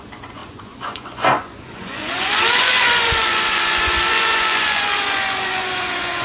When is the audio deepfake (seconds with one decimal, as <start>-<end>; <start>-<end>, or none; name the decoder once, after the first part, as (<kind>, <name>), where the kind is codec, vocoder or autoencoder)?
0.0-6.2 (vocoder, Vocos)